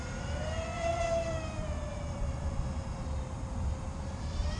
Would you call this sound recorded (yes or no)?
no